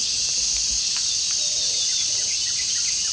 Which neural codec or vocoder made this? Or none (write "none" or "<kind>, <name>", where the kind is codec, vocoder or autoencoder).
none